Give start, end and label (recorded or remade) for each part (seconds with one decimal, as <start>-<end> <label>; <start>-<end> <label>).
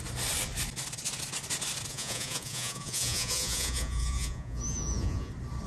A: 0.0-1.9 recorded; 1.9-5.3 remade; 5.3-5.7 recorded